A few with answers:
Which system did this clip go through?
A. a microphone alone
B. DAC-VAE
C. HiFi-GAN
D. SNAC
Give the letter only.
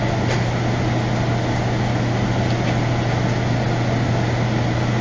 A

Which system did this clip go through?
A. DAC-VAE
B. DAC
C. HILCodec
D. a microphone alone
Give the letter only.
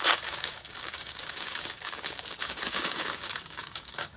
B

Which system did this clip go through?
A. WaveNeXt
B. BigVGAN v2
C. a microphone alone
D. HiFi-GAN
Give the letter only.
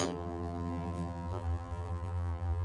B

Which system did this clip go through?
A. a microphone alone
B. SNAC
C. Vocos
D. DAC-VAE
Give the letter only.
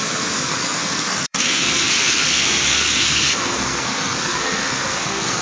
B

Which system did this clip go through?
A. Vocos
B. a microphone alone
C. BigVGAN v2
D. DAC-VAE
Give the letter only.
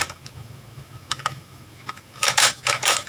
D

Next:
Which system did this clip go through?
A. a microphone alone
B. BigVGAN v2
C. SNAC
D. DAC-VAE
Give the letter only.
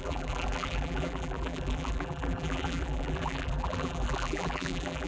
B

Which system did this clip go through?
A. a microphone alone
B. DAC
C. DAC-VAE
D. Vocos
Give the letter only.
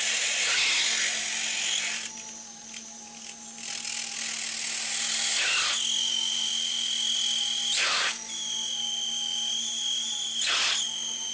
A